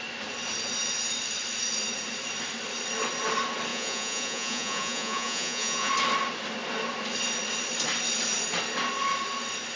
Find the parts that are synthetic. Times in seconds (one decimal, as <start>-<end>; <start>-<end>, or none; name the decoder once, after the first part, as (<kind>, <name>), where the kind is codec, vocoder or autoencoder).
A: 3.7-5.9 (vocoder, Vocos)